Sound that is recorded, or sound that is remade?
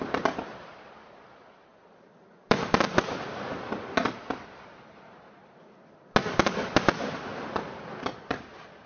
recorded